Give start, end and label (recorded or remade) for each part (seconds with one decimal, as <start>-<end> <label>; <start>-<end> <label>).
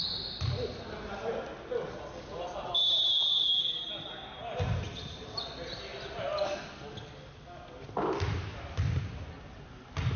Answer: 0.0-10.2 recorded